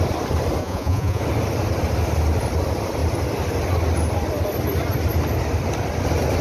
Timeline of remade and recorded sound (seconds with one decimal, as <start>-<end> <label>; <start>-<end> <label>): 0.0-0.6 recorded; 0.6-1.2 remade; 1.2-6.4 recorded